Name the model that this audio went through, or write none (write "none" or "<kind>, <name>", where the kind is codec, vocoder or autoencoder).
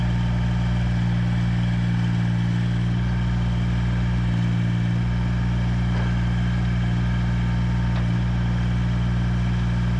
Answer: none